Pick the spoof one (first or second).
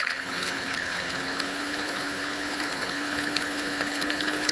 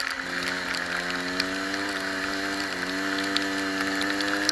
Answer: first